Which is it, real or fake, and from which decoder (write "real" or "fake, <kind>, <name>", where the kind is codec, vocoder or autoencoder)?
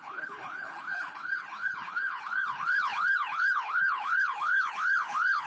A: fake, codec, HILCodec